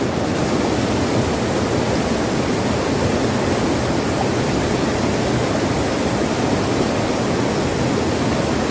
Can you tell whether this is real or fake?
real